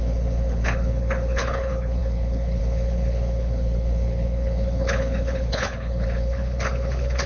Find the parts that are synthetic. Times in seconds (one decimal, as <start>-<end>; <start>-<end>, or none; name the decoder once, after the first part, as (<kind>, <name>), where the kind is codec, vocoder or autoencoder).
0.0-7.3 (codec, HILCodec)